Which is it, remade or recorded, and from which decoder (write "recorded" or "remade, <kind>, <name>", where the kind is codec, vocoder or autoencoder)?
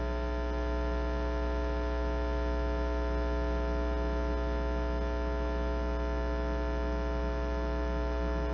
recorded